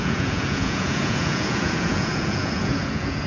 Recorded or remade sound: remade